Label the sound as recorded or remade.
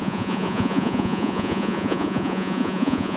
remade